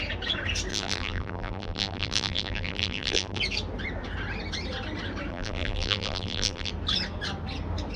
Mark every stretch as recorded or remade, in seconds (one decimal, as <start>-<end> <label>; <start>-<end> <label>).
0.0-0.7 recorded; 0.7-3.4 remade; 3.4-5.3 recorded; 5.3-6.7 remade; 6.7-8.0 recorded